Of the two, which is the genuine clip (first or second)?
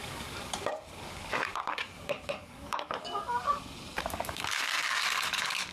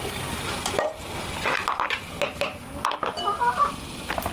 second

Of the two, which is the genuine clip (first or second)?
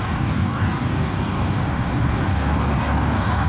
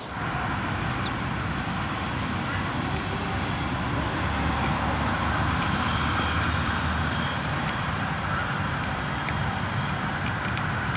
second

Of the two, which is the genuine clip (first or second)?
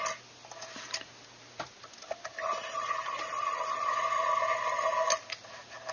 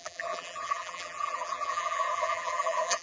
first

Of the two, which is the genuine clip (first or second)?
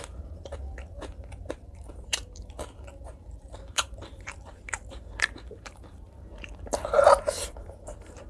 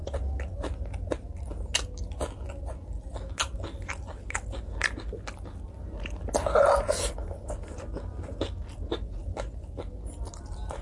second